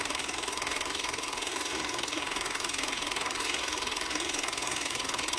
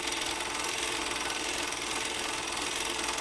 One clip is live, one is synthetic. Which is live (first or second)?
second